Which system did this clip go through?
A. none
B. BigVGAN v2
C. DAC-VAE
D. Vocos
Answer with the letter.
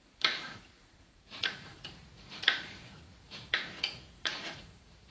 D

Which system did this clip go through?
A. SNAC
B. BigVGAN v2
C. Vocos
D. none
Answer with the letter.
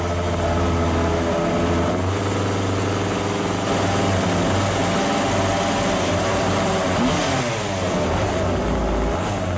D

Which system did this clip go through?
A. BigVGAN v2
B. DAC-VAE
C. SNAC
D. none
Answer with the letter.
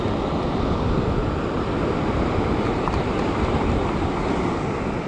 D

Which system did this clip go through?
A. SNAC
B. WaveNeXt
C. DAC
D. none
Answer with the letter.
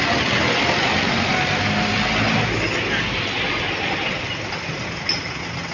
D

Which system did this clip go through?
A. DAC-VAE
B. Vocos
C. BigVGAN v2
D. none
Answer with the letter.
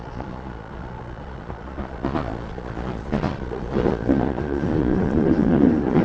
B